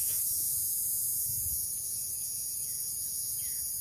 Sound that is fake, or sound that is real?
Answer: fake